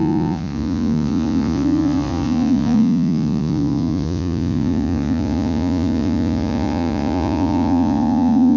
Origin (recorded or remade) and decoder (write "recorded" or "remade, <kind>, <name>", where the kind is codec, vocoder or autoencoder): remade, vocoder, Vocos